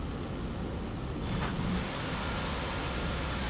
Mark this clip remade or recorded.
recorded